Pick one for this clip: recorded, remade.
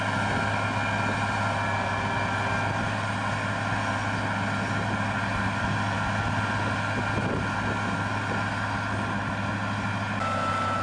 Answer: recorded